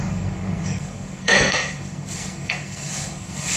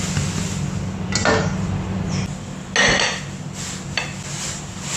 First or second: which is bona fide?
second